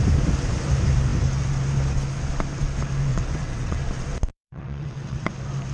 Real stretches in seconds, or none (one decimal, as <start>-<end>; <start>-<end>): 0.0-3.1; 3.8-4.3; 5.3-5.7